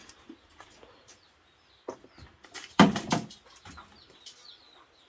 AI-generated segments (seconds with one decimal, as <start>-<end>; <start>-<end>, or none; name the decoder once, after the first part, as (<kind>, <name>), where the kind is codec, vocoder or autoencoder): none

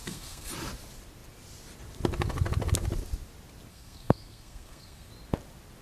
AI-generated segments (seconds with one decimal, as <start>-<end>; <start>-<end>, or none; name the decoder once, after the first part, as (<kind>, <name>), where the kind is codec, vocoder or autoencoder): 0.0-0.5 (codec, SNAC); 3.7-5.1

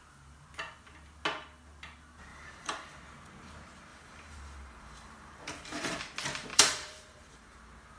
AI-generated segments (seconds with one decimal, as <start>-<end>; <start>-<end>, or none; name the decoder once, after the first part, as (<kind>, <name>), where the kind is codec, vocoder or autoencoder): 2.3-3.0 (vocoder, BigVGAN v2); 3.9-6.0; 6.5-7.6

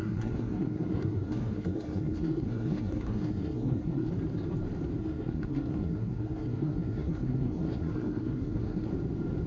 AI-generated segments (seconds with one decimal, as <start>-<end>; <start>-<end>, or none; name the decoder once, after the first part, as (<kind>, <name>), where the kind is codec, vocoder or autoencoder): 0.0-4.1 (codec, SNAC); 5.0-8.9

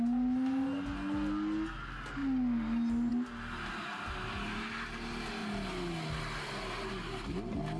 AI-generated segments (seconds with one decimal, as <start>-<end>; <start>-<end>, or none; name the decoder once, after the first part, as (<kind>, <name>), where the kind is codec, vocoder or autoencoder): none

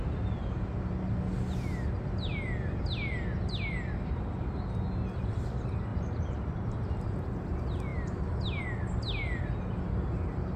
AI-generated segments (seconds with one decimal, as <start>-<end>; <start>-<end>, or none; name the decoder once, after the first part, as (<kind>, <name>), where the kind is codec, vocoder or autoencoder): 5.9-6.9 (vocoder, BigVGAN v2)

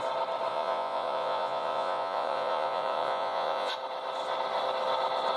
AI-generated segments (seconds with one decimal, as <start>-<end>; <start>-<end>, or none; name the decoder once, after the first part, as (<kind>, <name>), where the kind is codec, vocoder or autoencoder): 0.5-3.7 (vocoder, Vocos)